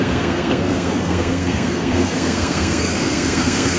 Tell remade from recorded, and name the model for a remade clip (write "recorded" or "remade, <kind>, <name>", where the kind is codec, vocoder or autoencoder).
remade, codec, SNAC